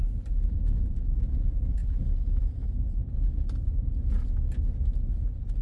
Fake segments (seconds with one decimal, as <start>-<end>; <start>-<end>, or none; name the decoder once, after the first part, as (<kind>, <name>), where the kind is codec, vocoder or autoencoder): 0.0-1.8 (vocoder, BigVGAN v2)